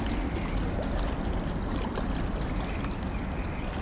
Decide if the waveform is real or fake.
real